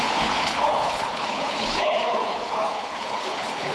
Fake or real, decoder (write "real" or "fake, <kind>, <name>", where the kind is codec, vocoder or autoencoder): fake, codec, HILCodec